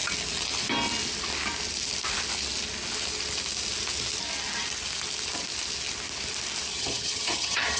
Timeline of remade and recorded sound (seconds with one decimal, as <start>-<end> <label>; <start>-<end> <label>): 0.0-6.7 recorded; 6.7-7.8 remade